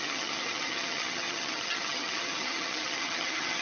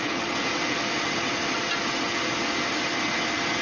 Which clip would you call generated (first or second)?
first